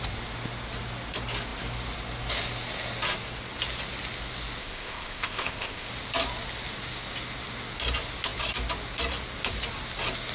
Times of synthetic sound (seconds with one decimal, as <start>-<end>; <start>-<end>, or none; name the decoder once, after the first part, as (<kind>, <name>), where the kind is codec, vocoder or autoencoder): 4.6-5.9 (codec, ZipCodec)